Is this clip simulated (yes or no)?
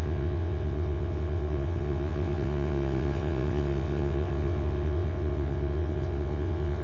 yes